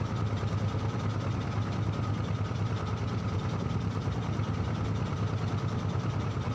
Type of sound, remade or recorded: remade